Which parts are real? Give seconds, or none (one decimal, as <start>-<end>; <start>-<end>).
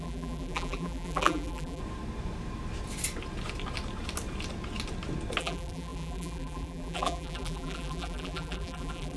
1.8-5.4